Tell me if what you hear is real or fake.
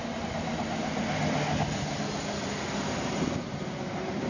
real